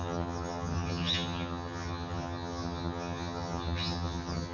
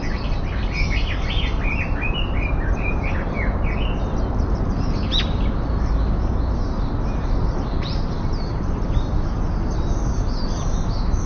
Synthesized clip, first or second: first